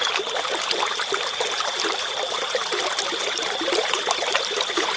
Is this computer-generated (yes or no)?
yes